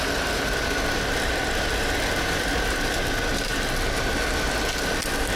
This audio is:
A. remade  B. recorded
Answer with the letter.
B